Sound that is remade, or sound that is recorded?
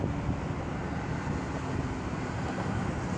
recorded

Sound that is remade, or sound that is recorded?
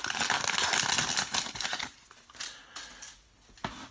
recorded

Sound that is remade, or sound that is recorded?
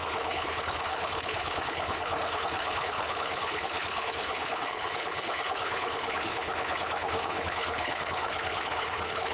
remade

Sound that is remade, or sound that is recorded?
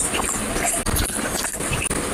recorded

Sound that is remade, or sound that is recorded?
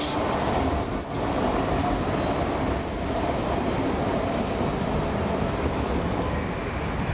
recorded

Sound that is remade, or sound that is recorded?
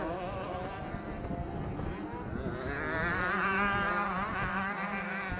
recorded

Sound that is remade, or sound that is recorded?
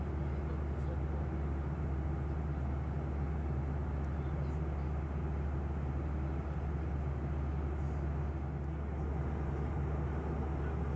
recorded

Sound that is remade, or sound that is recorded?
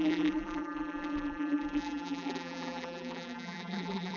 remade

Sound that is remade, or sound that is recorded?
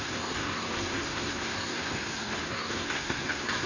remade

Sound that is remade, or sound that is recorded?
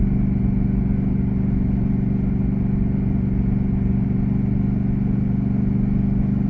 recorded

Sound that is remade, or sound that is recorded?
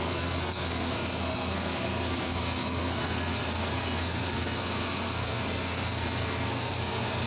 remade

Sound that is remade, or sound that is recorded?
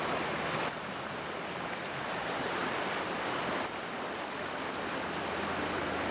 recorded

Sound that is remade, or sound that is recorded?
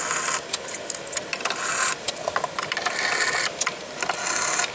recorded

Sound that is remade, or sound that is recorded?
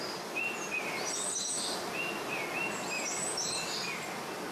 recorded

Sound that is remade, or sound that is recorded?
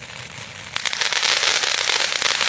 recorded